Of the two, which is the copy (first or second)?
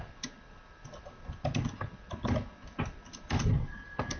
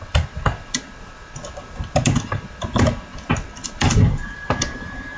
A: second